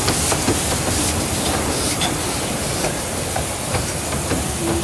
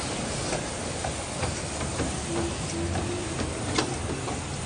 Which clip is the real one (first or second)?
second